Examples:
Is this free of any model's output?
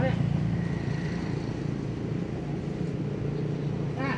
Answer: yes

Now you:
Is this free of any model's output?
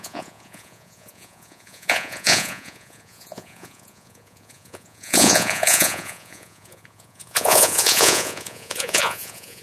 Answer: no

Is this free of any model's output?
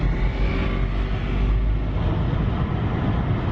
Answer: yes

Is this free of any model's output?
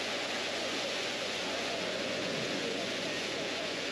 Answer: no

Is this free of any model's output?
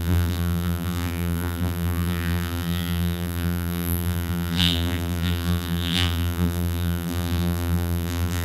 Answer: no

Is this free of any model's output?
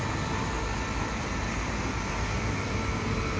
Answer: yes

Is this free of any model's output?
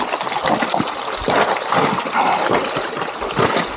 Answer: yes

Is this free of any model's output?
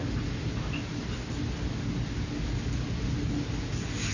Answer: yes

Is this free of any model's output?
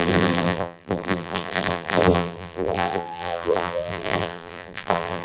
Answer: no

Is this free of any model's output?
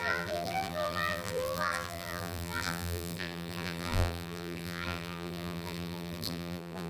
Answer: no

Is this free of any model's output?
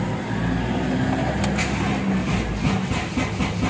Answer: yes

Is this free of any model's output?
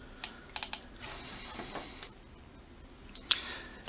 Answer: yes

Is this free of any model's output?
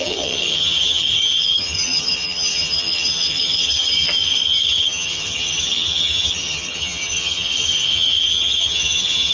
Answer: no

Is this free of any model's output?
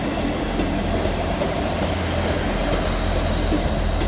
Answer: yes